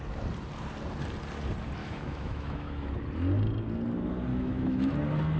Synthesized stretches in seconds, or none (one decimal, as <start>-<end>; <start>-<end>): 1.8-2.9; 4.3-4.9